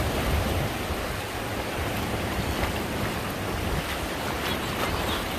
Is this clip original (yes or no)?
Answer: yes